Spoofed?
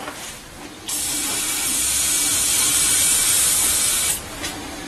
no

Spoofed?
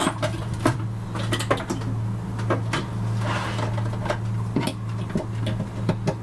no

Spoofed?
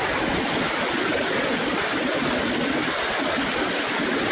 no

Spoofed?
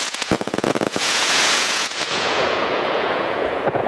yes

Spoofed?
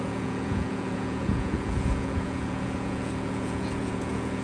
yes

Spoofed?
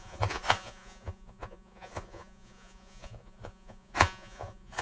yes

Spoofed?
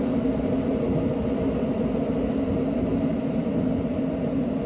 no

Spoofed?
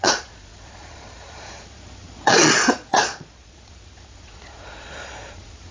yes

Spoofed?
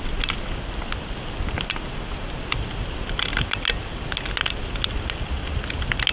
no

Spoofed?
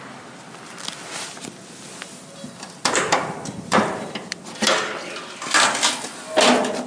no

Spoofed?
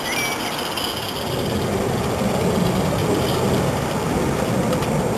no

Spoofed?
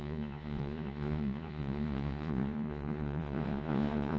yes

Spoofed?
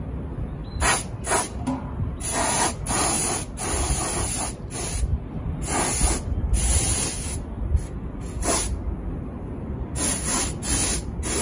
no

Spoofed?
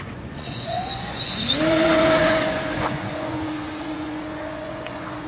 yes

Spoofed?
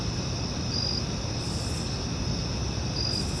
no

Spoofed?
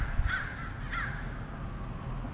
no